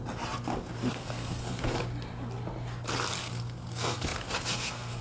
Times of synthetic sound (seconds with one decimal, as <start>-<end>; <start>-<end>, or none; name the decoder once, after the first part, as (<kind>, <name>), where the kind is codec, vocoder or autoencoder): 0.9-1.8 (codec, SNAC); 3.2-5.0

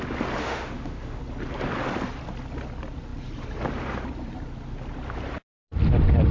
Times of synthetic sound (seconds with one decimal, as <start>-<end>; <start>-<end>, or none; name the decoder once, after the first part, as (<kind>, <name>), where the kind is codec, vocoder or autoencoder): 0.4-1.2 (autoencoder, DAC-VAE)

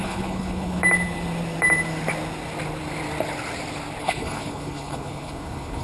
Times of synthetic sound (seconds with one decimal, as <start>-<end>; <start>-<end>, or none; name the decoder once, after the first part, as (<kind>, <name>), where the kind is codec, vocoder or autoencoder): 0.0-0.8 (codec, HILCodec); 4.0-5.8